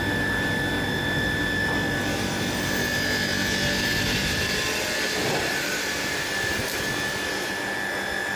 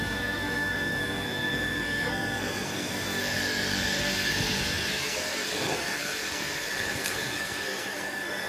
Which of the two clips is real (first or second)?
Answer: first